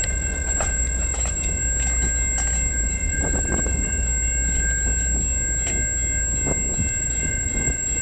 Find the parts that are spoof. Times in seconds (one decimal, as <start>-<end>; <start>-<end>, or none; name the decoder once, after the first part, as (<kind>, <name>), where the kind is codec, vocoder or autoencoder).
0.0-1.6 (vocoder, Vocos); 2.7-4.1; 7.0-8.0